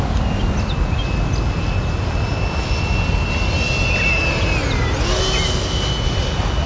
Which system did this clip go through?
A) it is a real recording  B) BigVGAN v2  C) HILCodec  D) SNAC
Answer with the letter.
A